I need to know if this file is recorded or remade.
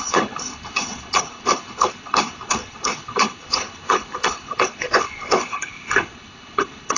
remade